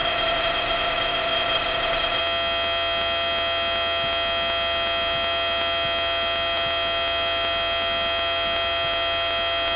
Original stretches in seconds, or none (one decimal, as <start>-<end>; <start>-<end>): 2.2-9.8